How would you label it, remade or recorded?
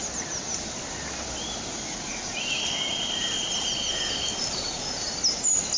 recorded